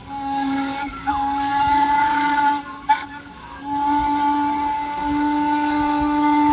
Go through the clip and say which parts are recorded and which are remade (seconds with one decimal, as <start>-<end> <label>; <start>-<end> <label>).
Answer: 0.0-3.6 remade; 3.6-4.7 recorded; 4.7-6.5 remade

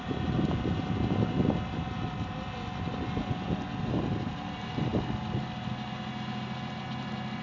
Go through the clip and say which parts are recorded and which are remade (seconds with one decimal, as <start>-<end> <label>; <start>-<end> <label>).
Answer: 0.0-7.4 recorded

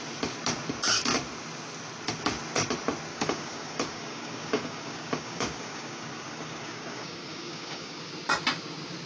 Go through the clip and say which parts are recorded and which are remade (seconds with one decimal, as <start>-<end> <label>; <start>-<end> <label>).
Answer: 0.0-3.1 recorded; 3.1-8.1 remade; 8.1-9.1 recorded

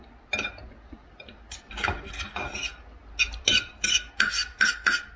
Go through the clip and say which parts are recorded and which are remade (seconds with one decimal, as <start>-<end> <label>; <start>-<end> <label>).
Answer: 0.0-5.2 recorded

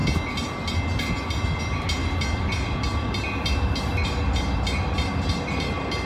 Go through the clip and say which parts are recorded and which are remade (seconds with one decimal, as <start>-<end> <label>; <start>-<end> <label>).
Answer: 0.0-6.1 recorded

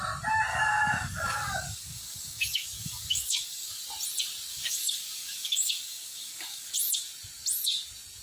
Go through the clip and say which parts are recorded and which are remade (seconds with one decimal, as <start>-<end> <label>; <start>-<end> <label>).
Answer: 0.0-0.5 recorded; 0.5-3.8 remade; 3.8-4.5 recorded; 4.5-6.7 remade; 6.7-8.2 recorded

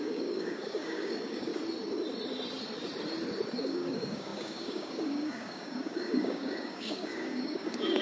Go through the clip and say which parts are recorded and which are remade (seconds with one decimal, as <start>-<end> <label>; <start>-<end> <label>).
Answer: 0.0-1.5 remade; 1.5-3.6 recorded; 3.6-8.0 remade